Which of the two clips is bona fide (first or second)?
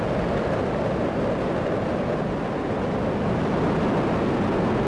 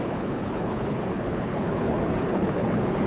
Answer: first